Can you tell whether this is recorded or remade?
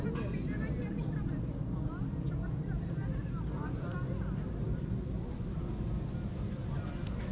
recorded